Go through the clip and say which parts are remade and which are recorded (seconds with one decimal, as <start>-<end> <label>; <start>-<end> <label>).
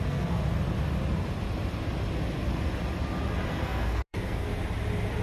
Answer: 0.0-0.4 remade; 0.4-3.5 recorded; 3.5-4.5 remade; 4.5-5.2 recorded